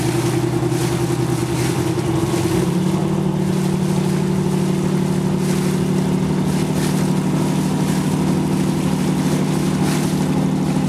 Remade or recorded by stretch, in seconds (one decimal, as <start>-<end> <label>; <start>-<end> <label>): 0.0-10.9 recorded

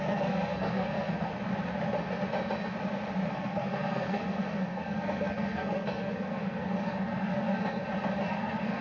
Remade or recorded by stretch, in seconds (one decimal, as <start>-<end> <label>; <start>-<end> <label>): 0.0-1.3 remade; 1.3-3.3 recorded; 3.3-7.8 remade; 7.8-8.3 recorded; 8.3-8.8 remade